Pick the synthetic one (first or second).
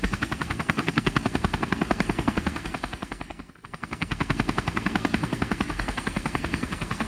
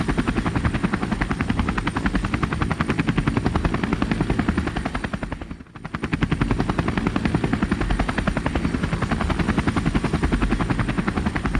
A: first